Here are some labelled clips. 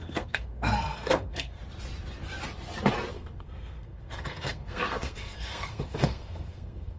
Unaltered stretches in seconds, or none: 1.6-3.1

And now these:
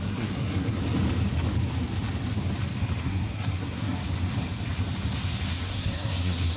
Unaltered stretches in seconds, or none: 0.8-3.0; 4.0-5.7

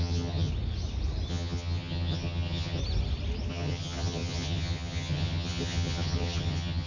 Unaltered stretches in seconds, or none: 0.5-1.3; 2.8-3.5

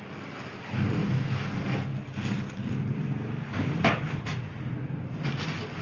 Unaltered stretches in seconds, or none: 0.0-1.0; 1.5-5.8